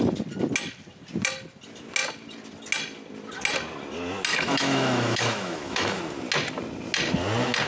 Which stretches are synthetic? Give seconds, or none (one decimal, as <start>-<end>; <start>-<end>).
4.3-6.0